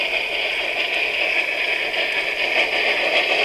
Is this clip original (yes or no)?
yes